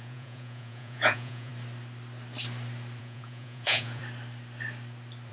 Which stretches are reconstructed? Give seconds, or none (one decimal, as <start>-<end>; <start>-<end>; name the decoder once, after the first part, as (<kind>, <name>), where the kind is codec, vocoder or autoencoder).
0.0-1.5 (vocoder, Vocos); 3.0-4.0